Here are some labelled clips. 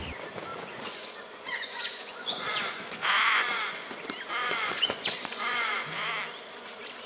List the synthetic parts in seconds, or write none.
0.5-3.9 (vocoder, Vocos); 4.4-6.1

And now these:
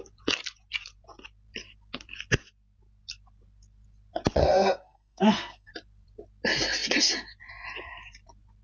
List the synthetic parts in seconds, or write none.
4.4-5.7 (codec, SNAC)

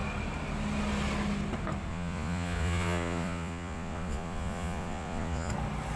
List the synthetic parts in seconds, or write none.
1.9-5.5 (vocoder, Vocos)

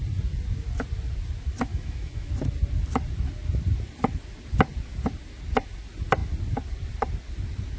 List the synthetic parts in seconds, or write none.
1.7-2.3 (autoencoder, DAC-VAE)

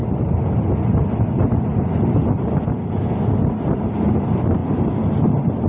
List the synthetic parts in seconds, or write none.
none

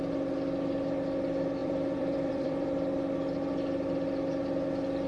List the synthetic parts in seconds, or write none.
1.6-2.7 (vocoder, BigVGAN v2)

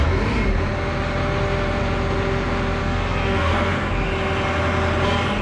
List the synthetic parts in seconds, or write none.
2.8-3.9 (codec, SNAC)

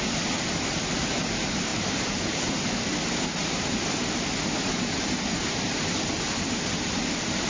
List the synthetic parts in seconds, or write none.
none